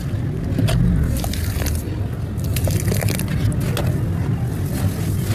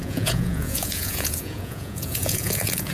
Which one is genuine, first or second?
first